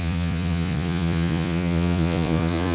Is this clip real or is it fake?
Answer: fake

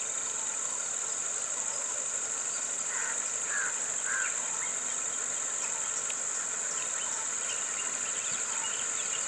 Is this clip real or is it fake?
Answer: real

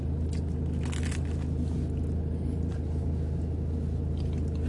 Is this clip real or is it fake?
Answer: real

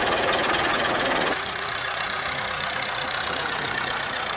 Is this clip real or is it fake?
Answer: fake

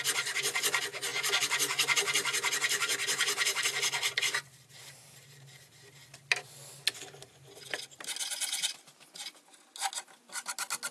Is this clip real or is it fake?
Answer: real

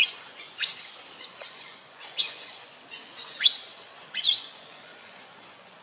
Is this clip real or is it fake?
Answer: fake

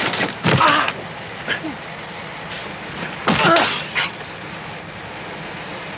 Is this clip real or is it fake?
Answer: real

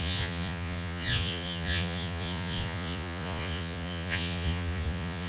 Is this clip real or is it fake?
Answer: fake